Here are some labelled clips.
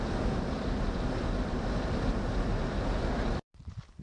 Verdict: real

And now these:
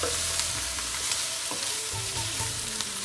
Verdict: fake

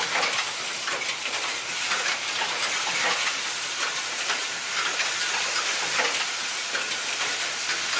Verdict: real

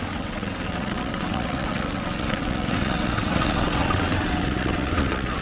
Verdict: fake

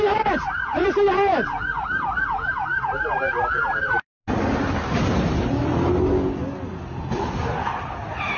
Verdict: real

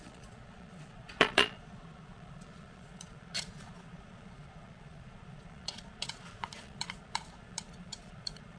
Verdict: fake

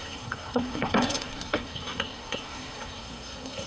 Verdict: fake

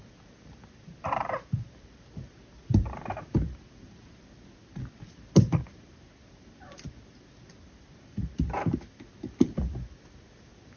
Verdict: real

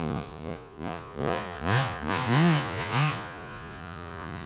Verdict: fake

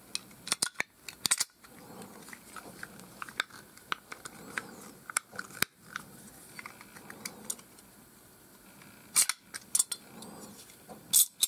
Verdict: real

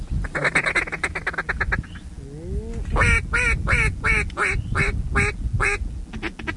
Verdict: real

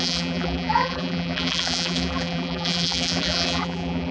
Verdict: fake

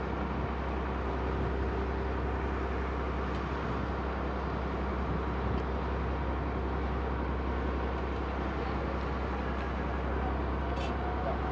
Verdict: real